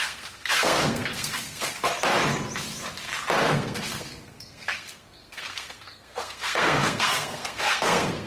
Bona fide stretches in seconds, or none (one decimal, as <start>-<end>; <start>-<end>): 1.9-3.4